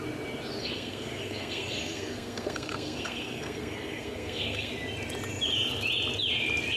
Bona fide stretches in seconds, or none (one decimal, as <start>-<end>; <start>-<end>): 0.0-0.6; 4.7-6.8